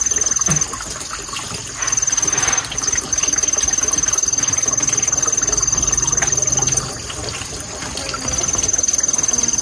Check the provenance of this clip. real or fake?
real